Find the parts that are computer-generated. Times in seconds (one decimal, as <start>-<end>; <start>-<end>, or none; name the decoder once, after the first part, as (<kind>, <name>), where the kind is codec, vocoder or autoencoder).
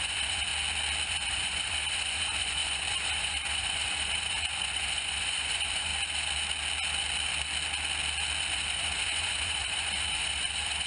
0.0-0.5 (vocoder, Vocos); 1.1-5.9; 8.5-10.9